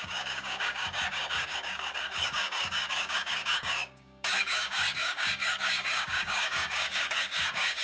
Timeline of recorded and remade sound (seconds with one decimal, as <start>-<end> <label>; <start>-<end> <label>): 0.0-7.8 remade